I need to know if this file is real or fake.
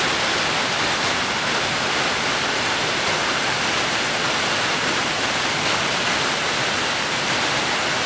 real